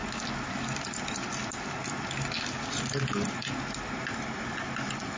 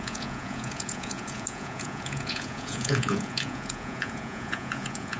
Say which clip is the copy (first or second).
second